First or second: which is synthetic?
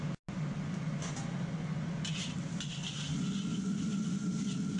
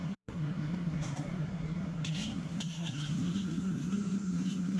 second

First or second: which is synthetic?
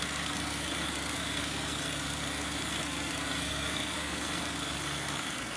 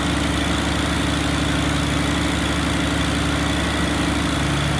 first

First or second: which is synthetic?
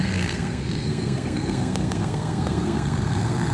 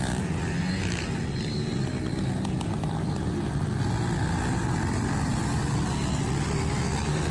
first